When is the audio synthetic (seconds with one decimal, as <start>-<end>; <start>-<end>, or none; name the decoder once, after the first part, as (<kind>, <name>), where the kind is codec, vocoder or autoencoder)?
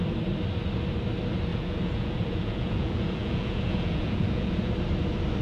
1.5-4.7 (vocoder, Vocos)